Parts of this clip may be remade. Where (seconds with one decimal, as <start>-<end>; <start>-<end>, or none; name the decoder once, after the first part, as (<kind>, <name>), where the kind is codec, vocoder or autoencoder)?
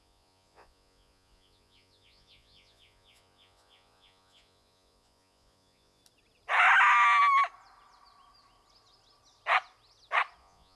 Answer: 0.0-6.0 (vocoder, Vocos); 10.4-10.8